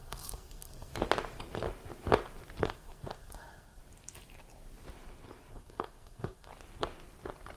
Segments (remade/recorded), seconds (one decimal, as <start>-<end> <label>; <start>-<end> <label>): 0.0-0.9 remade; 0.9-2.6 recorded; 2.6-3.8 remade; 3.8-5.5 recorded; 5.5-6.5 remade; 6.5-7.6 recorded